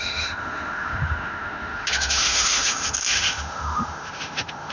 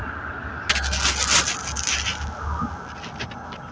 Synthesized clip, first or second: first